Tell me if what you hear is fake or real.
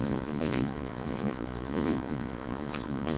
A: fake